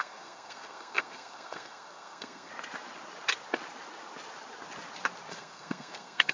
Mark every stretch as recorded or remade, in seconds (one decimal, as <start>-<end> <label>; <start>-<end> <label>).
0.0-2.5 remade; 2.5-5.3 recorded; 5.3-6.3 remade